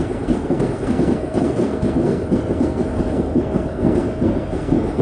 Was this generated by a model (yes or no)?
yes